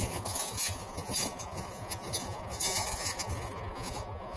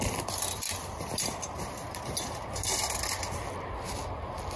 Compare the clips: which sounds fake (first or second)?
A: first